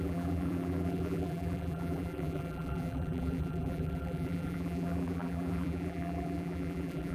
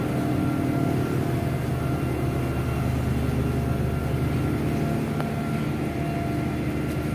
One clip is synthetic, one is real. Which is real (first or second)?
second